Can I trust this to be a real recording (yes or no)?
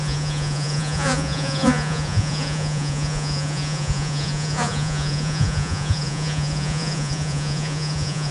no